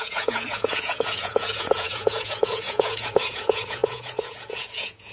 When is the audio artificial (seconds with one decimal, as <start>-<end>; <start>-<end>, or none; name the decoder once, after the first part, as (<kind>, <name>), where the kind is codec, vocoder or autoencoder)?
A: 0.0-5.1 (vocoder, Vocos)